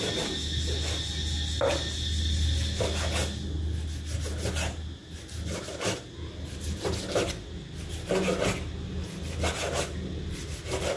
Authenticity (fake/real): real